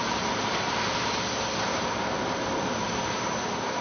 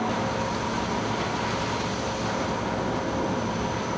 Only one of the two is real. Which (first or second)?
second